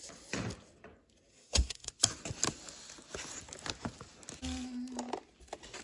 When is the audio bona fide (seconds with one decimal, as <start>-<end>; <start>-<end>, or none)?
0.0-1.3; 1.9-5.8